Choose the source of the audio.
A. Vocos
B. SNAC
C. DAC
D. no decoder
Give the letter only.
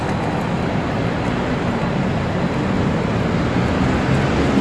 D